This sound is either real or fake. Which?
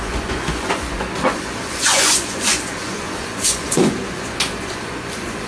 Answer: fake